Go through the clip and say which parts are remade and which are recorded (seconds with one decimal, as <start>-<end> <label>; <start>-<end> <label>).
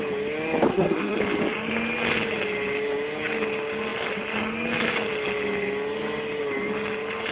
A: 0.0-0.7 recorded; 0.7-1.2 remade; 1.2-7.3 recorded